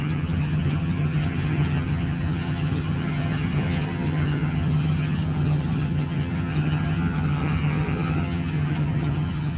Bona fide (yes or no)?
no